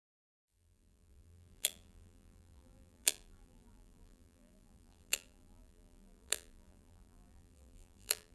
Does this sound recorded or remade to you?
remade